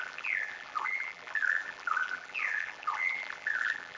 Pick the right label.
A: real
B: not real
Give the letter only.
B